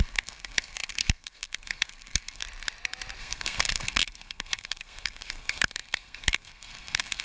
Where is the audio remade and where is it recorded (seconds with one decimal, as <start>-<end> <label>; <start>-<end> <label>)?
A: 0.0-2.4 remade; 2.4-3.2 recorded; 3.2-7.2 remade